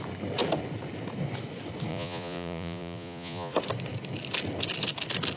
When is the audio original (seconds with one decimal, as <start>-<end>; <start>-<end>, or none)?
0.0-1.9; 3.5-5.4